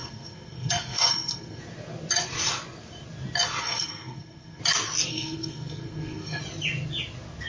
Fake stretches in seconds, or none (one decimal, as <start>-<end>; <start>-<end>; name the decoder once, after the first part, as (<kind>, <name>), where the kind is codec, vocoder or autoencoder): 0.0-1.6 (codec, SNAC); 3.6-4.6; 5.1-6.4